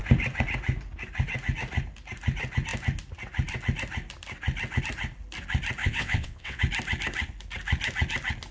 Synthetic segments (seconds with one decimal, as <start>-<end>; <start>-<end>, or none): 5.8-6.6